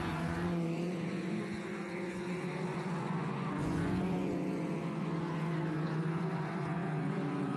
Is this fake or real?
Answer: fake